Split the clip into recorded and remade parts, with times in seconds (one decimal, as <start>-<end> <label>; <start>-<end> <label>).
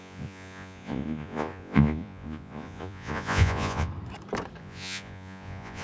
0.0-3.9 remade; 3.9-4.6 recorded; 4.6-5.8 remade